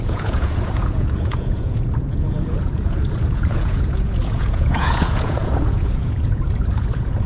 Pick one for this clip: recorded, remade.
remade